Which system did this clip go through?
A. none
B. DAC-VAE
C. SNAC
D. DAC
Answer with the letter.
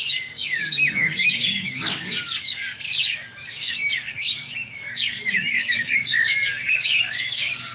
D